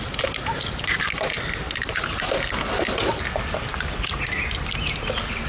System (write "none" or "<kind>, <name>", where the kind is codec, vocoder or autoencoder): none